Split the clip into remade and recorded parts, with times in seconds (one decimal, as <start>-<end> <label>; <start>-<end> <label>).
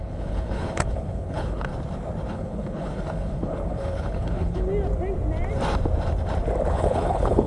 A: 0.0-1.7 remade; 1.7-2.3 recorded; 2.3-4.7 remade; 4.7-6.7 recorded; 6.7-7.5 remade